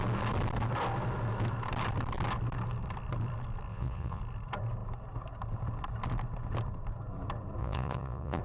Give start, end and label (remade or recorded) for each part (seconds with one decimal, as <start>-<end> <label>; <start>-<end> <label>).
0.0-3.7 recorded; 3.7-4.2 remade; 4.2-7.6 recorded; 7.6-8.4 remade